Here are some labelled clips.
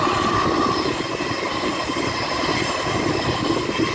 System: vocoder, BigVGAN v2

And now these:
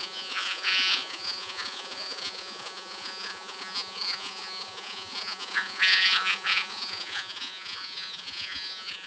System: vocoder, Vocos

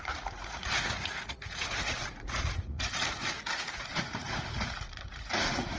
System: vocoder, Vocos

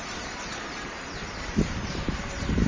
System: vocoder, BigVGAN v2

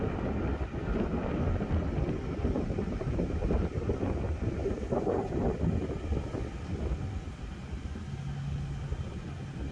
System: none